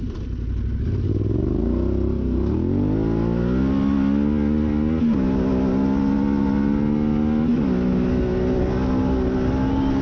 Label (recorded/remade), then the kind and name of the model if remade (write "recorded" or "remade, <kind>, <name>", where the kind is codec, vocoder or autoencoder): recorded